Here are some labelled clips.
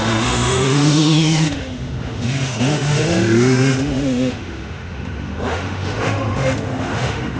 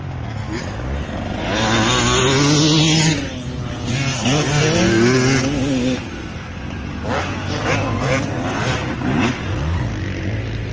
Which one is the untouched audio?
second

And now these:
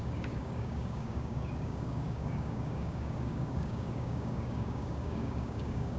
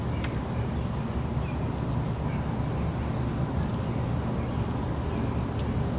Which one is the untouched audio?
second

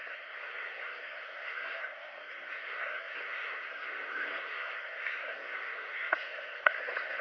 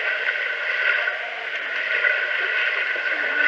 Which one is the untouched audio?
second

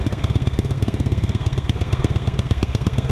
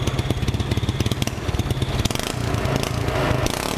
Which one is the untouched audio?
second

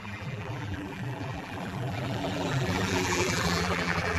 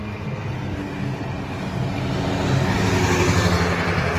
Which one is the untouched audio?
second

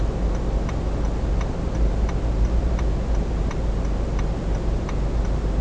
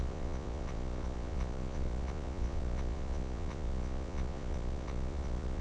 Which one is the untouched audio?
first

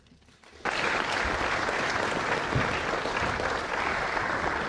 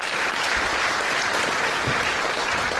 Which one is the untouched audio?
first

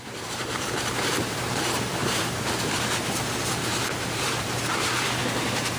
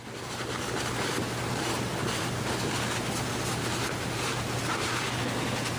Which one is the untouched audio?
second